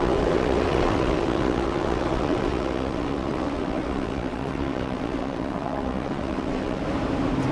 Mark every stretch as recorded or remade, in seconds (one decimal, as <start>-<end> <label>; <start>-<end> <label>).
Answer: 0.0-6.8 remade; 6.8-7.5 recorded